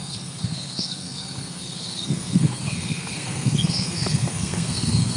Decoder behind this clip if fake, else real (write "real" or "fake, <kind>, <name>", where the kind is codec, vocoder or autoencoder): fake, codec, SNAC